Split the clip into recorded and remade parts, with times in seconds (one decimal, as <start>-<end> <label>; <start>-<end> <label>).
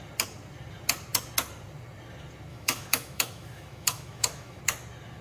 0.0-2.5 recorded; 2.5-4.6 remade; 4.6-5.2 recorded